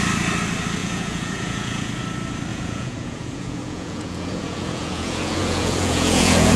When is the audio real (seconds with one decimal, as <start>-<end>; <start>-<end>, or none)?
0.0-0.8; 1.9-2.5